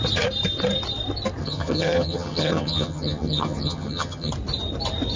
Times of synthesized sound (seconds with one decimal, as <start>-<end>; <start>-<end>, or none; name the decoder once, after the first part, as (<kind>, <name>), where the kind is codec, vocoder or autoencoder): 1.4-4.3 (vocoder, HiFi-GAN)